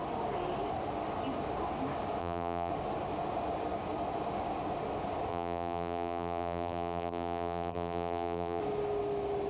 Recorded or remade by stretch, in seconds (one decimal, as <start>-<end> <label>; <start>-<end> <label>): 0.0-2.2 recorded; 2.2-2.7 remade; 2.7-5.3 recorded; 5.3-8.6 remade; 8.6-9.5 recorded